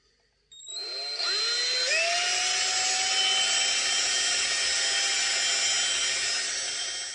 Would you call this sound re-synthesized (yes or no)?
no